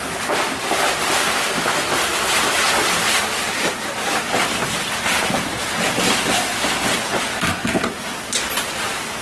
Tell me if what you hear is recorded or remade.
recorded